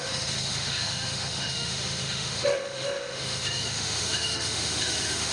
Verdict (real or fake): fake